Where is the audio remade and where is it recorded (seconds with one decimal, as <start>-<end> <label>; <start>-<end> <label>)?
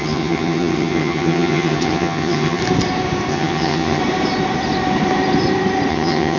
0.0-2.6 remade; 2.6-3.3 recorded; 3.3-4.0 remade; 4.0-5.9 recorded; 5.9-6.4 remade